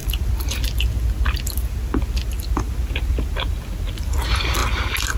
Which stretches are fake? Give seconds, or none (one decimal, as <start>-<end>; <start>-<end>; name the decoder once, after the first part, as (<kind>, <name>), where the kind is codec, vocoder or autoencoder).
none